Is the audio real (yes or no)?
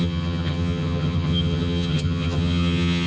no